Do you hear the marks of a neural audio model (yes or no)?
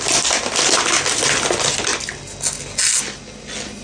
no